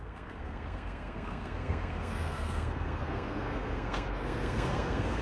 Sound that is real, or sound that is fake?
fake